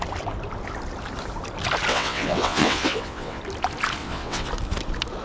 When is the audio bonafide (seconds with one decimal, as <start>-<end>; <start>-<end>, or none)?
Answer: 0.0-1.9; 3.4-4.0; 4.5-5.2